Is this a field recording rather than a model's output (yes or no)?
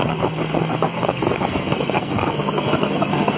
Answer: no